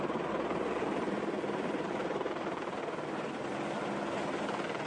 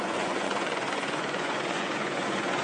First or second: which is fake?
second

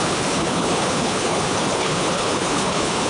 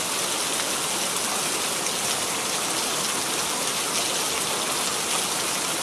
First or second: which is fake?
first